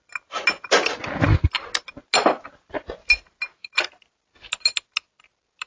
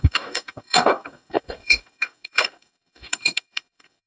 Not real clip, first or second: second